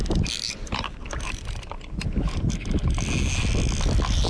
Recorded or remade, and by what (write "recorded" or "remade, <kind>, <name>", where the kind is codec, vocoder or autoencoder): recorded